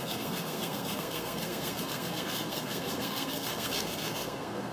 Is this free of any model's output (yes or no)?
no